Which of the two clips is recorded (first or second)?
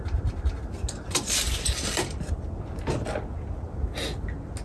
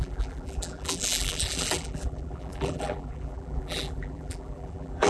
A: first